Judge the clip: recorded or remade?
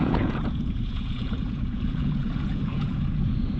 remade